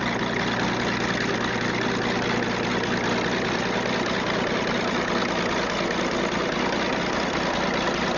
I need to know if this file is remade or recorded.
recorded